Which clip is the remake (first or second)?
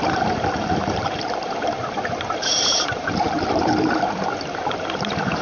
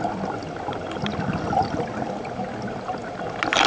first